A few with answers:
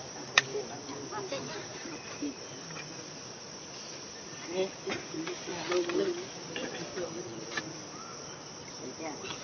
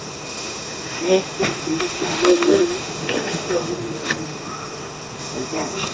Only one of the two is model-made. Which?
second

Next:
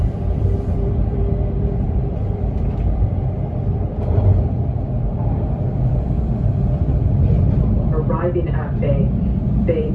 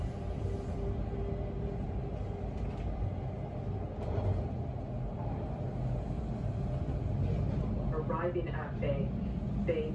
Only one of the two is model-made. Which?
first